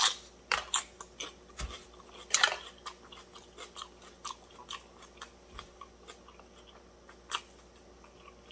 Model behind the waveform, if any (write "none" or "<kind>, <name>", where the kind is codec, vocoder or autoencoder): none